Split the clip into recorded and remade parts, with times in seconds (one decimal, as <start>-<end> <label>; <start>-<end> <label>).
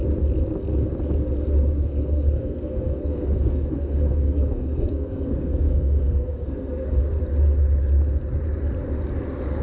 0.0-1.9 recorded; 1.9-7.0 remade; 7.0-9.6 recorded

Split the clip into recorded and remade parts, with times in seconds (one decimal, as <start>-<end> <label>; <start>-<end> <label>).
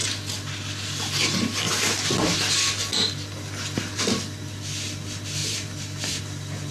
0.0-5.4 recorded; 5.4-6.2 remade; 6.2-6.7 recorded